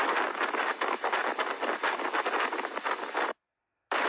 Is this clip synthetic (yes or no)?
no